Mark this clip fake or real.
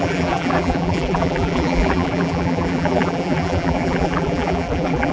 fake